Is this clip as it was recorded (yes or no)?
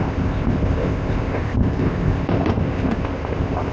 no